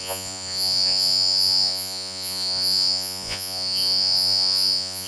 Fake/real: fake